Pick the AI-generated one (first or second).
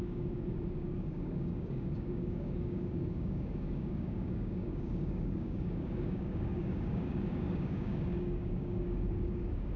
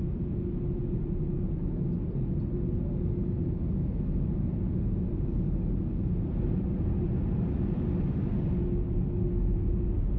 first